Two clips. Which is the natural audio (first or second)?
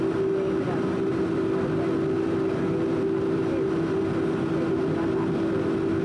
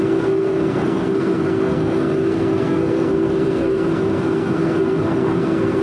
first